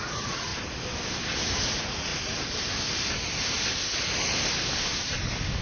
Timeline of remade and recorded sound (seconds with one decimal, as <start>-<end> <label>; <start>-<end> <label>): 0.0-0.5 remade; 0.5-1.4 recorded; 1.4-2.1 remade; 2.1-5.6 recorded